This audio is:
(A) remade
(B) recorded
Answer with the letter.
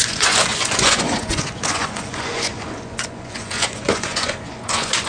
A